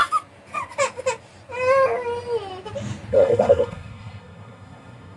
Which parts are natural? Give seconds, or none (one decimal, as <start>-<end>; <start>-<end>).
0.0-3.1